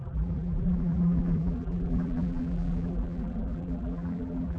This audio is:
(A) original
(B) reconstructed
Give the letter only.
B